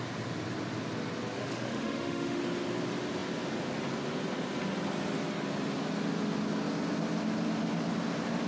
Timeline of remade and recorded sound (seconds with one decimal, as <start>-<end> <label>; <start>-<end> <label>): 0.0-1.4 recorded; 1.4-2.4 remade; 2.4-8.5 recorded